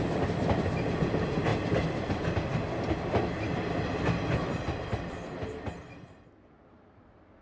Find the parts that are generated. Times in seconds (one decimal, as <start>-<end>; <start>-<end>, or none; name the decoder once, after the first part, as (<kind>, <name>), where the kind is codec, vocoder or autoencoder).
none